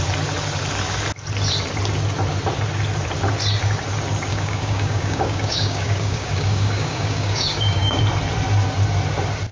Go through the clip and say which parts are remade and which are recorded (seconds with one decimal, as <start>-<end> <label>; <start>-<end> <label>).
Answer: 0.0-4.3 recorded; 4.3-8.0 remade; 8.0-9.5 recorded